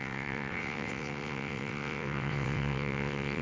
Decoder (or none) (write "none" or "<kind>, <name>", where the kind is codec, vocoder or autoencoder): vocoder, WaveNeXt